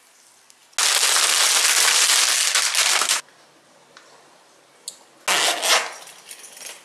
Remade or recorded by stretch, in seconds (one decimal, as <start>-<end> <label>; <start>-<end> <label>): 0.0-6.8 recorded